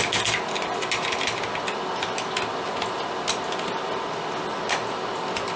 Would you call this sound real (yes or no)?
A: yes